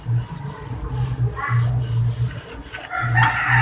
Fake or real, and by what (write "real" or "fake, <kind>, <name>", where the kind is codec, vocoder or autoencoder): fake, vocoder, BigVGAN v2